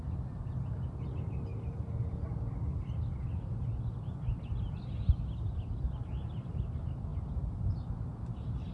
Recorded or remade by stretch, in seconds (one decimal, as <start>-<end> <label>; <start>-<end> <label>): 0.0-8.7 recorded